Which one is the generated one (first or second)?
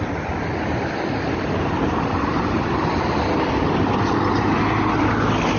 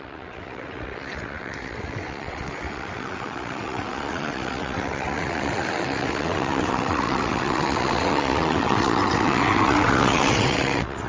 second